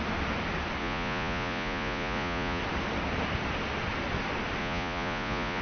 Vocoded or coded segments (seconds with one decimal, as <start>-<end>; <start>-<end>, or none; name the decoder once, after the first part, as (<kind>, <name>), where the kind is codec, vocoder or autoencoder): 0.8-2.6 (vocoder, Vocos); 4.6-5.6